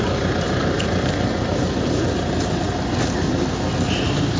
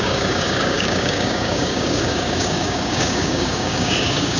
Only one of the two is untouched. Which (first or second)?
first